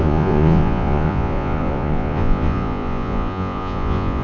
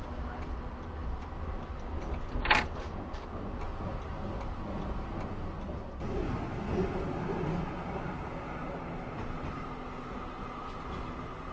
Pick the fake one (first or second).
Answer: first